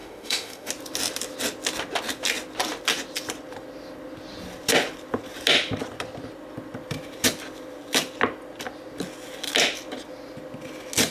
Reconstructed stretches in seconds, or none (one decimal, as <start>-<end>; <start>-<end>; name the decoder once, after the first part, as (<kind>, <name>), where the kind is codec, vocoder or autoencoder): 0.0-0.7 (autoencoder, DAC-VAE)